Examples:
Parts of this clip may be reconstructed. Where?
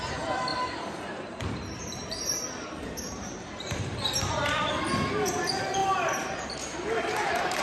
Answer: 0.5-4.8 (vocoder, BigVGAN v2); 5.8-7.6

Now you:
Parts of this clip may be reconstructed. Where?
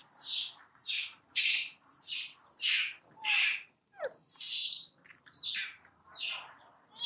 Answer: 0.9-4.6 (vocoder, BigVGAN v2); 5.2-7.1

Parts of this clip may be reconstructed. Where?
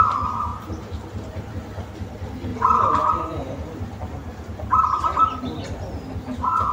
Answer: 0.5-1.5 (vocoder, BigVGAN v2); 2.5-3.1